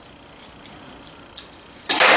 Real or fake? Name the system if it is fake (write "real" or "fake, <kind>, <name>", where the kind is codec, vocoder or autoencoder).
real